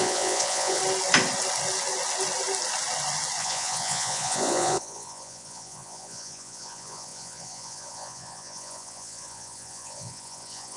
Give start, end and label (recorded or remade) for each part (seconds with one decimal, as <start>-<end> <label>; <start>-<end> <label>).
0.0-0.8 remade; 0.8-3.4 recorded; 3.4-10.8 remade